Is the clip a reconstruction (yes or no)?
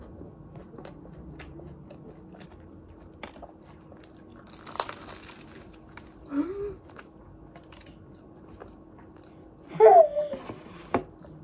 no